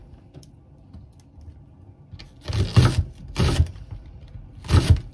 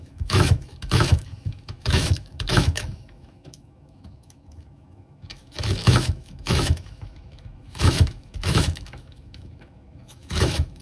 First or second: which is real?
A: first